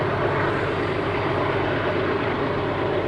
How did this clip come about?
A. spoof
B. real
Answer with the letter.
B